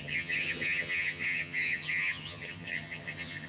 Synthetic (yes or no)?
yes